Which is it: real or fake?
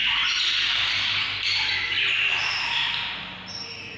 real